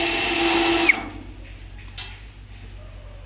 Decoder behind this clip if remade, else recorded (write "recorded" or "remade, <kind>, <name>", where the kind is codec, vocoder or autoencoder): recorded